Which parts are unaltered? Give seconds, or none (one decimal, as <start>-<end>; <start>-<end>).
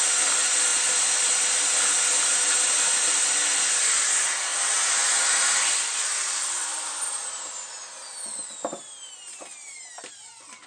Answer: 0.0-10.7